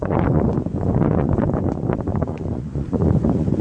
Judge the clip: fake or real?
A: fake